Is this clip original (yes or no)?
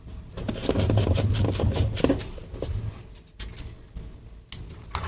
yes